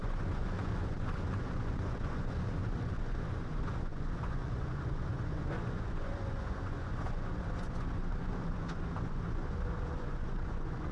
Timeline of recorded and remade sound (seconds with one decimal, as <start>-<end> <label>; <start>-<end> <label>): 0.0-10.9 remade